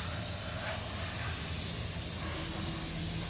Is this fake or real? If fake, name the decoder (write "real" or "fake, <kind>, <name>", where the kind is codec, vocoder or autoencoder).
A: real